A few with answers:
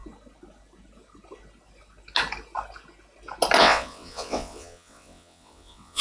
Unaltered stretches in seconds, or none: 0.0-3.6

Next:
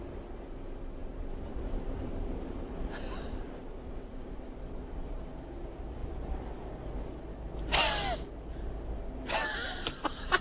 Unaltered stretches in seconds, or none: 0.0-1.0; 4.4-6.0; 6.7-10.4

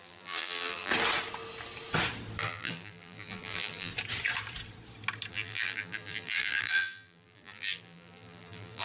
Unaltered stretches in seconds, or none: 0.9-2.4; 3.9-5.3

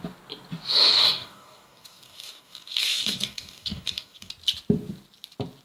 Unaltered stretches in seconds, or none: 0.0-0.9; 4.3-5.6

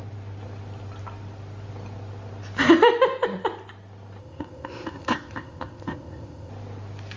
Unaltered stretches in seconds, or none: 0.0-4.2; 6.5-7.2